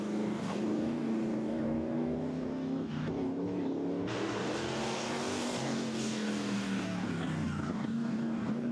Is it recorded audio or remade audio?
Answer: remade